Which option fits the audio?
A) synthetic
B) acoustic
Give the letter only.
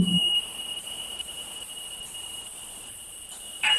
A